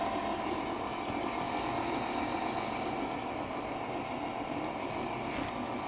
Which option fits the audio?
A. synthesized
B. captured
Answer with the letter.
B